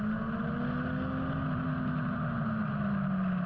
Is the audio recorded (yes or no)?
yes